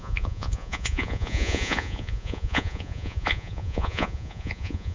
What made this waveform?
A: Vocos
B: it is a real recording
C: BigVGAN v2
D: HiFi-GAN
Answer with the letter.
A